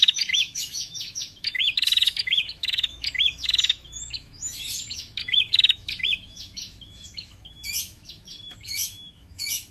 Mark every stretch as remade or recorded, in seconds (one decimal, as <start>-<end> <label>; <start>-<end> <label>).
0.0-9.7 remade